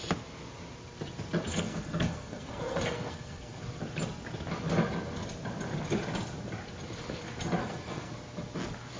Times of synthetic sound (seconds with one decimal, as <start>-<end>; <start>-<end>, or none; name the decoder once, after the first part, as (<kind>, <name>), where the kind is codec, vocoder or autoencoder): 1.5-3.6 (codec, SNAC); 7.6-8.1